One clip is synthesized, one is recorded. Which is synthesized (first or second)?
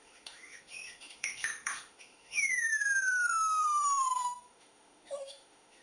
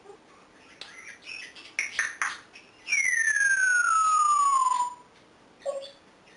first